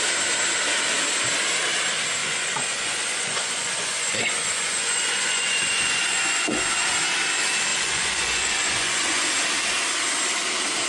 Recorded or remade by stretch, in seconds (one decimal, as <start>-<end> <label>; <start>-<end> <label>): 0.0-2.2 recorded; 2.2-6.6 remade; 6.6-7.7 recorded; 7.7-9.3 remade; 9.3-10.9 recorded